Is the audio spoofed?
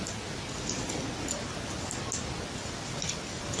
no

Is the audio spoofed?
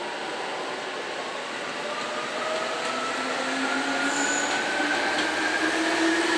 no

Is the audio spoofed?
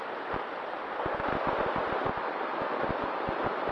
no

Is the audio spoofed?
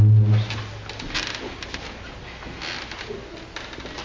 no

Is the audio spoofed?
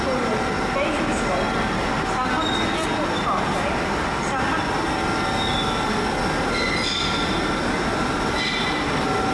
no